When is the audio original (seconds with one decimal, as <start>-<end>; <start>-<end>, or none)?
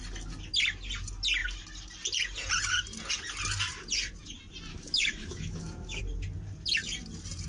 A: 0.0-4.7; 6.0-7.5